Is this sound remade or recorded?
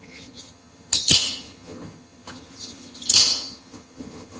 remade